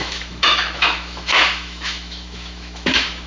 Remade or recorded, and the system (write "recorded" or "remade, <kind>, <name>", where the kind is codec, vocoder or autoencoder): remade, autoencoder, DAC-VAE